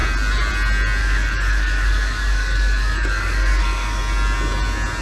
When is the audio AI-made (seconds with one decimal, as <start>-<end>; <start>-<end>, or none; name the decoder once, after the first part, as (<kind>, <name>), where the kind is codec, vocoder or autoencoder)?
1.0-4.0 (codec, DAC)